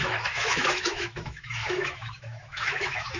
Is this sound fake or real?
fake